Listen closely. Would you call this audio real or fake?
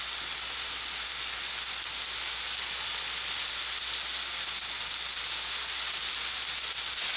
real